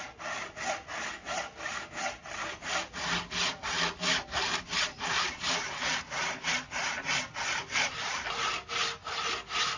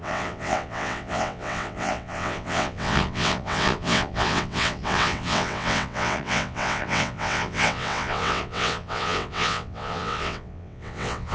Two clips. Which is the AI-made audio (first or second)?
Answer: second